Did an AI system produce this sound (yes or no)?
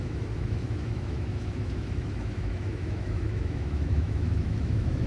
yes